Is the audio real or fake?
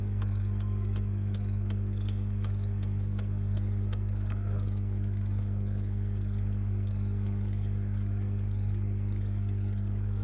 fake